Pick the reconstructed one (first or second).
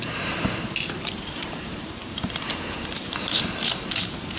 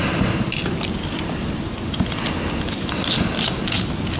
first